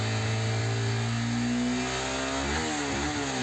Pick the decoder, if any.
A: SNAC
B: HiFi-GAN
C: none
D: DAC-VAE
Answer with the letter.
C